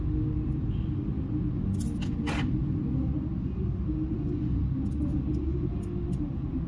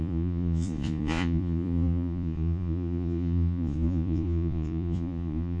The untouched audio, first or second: first